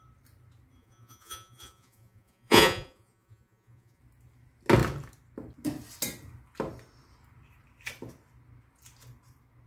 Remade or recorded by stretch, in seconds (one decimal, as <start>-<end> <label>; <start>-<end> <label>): 0.0-0.8 recorded; 0.8-4.0 remade; 4.0-9.7 recorded